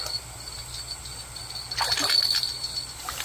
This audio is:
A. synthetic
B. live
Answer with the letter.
B